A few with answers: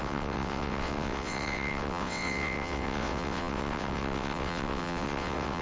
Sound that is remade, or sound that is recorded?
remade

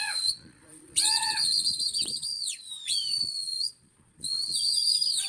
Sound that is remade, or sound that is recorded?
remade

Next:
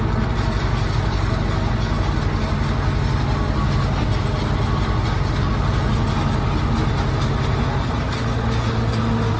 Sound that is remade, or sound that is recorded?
recorded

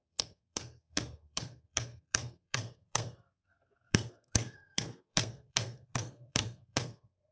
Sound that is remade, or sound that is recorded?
remade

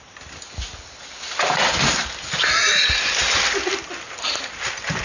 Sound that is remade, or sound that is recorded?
recorded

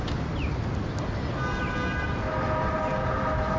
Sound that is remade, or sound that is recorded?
recorded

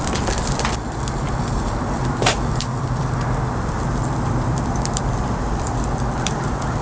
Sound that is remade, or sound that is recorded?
remade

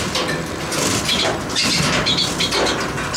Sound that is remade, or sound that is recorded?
recorded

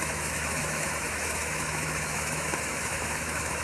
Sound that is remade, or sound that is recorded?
remade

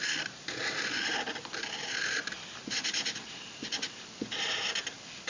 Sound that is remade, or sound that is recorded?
remade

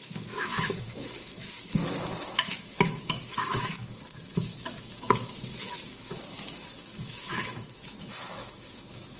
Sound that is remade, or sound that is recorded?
remade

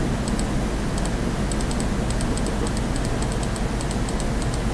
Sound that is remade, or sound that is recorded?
recorded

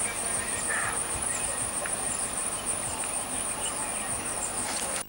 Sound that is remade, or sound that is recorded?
recorded